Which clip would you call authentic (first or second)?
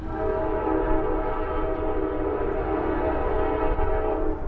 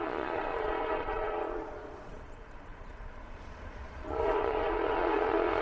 first